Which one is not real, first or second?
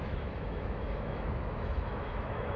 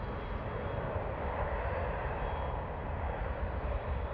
first